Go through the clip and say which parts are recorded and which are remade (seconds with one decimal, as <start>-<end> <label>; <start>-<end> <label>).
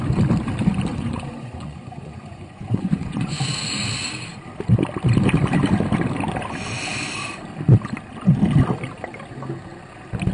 0.0-0.9 recorded; 0.9-3.4 remade; 3.4-10.3 recorded